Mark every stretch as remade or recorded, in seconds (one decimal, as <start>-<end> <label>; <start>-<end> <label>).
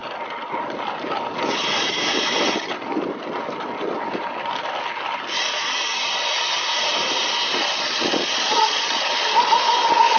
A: 0.0-7.7 recorded; 7.7-9.1 remade; 9.1-10.2 recorded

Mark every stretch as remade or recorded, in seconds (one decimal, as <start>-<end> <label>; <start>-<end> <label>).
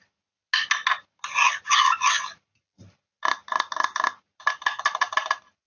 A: 0.0-5.7 recorded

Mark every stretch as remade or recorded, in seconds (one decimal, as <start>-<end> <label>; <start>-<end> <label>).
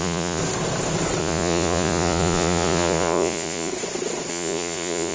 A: 0.0-0.4 remade; 0.4-1.2 recorded; 1.2-3.7 remade; 3.7-4.3 recorded; 4.3-5.1 remade